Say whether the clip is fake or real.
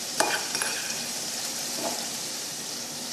fake